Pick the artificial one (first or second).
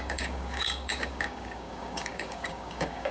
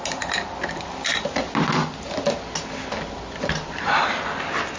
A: first